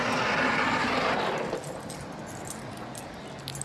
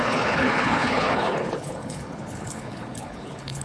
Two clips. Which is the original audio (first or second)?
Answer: first